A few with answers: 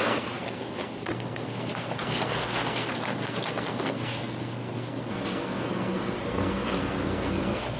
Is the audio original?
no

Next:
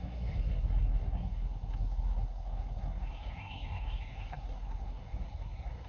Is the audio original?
no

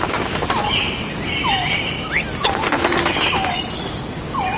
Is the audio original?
yes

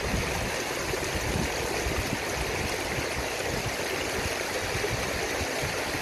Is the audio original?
yes